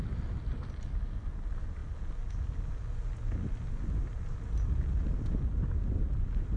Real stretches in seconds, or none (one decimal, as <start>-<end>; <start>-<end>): 0.0-6.6